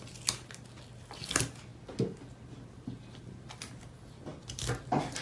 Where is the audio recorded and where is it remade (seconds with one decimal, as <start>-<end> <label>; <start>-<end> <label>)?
0.0-5.2 recorded